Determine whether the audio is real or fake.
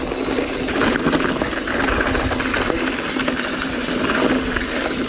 real